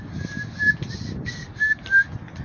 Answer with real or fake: real